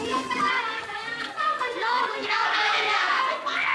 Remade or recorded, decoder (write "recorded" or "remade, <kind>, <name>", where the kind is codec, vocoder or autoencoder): remade, codec, SNAC